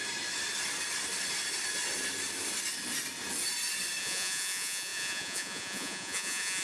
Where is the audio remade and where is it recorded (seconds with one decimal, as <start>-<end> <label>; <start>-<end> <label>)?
0.0-4.0 recorded; 4.0-6.6 remade